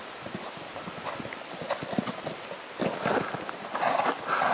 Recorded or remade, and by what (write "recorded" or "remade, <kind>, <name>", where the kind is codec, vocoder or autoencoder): recorded